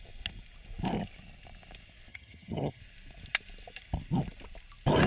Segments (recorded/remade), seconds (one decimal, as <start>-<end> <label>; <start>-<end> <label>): 0.0-2.1 recorded; 2.1-2.8 remade; 2.8-5.1 recorded